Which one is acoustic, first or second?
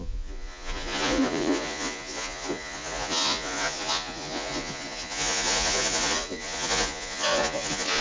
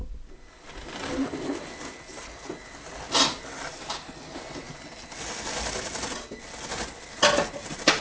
second